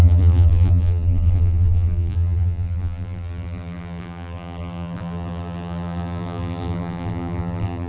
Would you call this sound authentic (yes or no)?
no